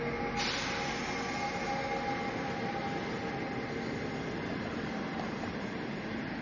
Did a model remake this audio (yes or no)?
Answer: no